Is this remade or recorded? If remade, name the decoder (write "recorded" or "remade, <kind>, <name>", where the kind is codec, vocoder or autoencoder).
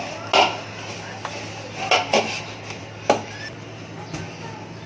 recorded